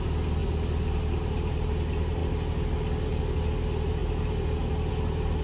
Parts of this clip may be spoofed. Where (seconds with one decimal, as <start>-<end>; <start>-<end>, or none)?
none